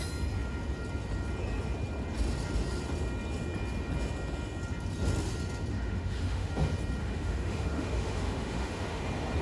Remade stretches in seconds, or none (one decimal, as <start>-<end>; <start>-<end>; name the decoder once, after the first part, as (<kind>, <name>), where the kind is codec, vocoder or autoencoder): 5.7-6.5 (autoencoder, DAC-VAE); 7.0-9.0